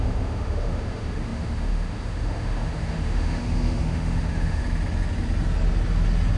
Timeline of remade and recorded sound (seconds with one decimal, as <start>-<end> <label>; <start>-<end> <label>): 0.0-4.6 remade; 4.6-6.4 recorded